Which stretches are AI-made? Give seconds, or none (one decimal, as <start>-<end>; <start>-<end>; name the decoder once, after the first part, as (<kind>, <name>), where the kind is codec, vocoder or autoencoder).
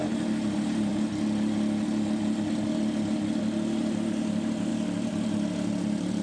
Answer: 0.0-0.9 (vocoder, BigVGAN v2); 3.4-4.7; 5.3-6.2